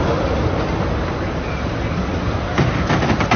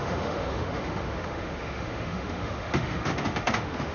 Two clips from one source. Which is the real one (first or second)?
first